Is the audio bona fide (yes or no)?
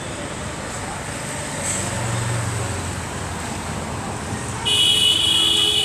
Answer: yes